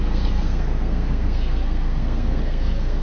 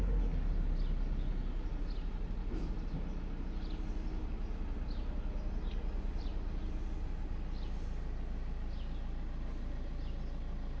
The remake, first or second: first